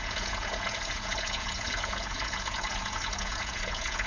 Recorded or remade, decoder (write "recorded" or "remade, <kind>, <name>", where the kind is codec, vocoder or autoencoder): remade, vocoder, Vocos